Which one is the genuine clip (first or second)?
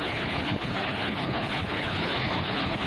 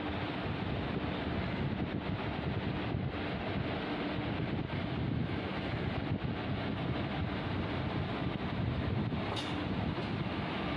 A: second